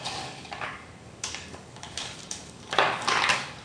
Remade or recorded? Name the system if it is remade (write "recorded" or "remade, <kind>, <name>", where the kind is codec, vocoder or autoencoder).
remade, codec, DAC